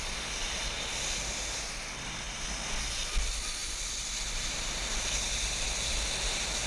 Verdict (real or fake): real